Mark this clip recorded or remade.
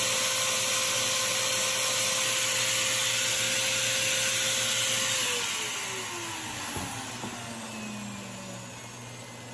recorded